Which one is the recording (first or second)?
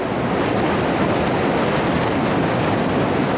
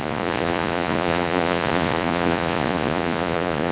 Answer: first